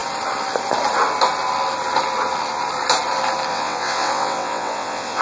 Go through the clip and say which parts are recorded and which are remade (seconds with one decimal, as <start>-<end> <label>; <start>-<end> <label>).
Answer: 0.0-3.5 recorded; 3.5-5.2 remade